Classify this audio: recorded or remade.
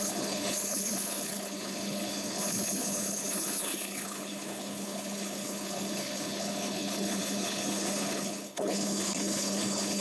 remade